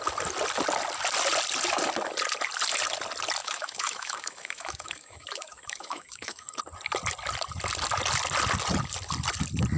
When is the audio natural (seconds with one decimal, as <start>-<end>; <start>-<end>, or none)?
0.0-3.4; 6.6-9.8